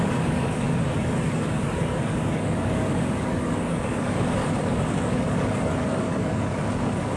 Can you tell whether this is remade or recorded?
remade